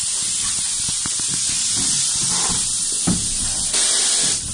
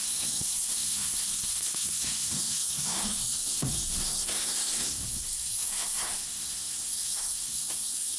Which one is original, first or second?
first